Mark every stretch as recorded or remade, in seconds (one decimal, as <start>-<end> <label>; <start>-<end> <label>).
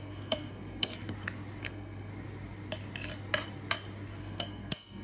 0.0-0.9 remade; 0.9-1.6 recorded; 1.6-2.1 remade; 2.1-4.2 recorded; 4.2-5.0 remade